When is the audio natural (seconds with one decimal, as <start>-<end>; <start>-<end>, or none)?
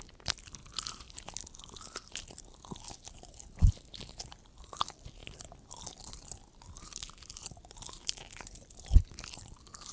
0.0-5.2; 6.0-9.9